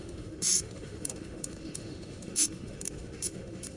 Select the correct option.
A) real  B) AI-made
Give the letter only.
B